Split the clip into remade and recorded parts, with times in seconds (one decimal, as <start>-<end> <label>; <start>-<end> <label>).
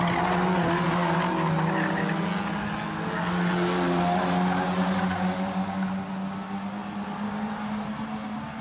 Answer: 0.0-8.6 recorded